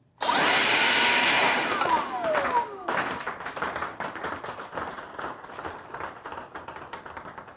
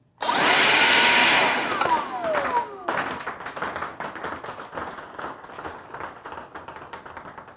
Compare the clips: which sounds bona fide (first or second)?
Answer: second